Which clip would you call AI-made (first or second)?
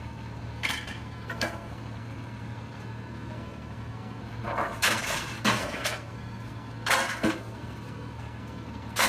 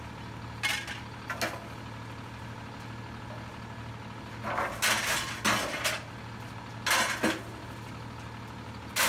first